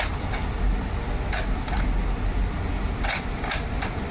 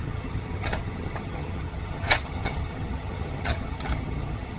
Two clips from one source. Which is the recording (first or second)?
first